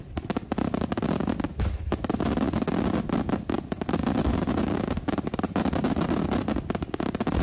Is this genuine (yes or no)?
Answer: yes